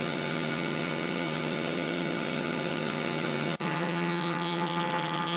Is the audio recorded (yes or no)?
no